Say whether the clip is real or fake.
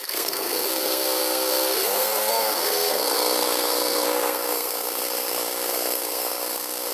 fake